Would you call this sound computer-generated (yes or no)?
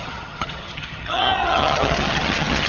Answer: yes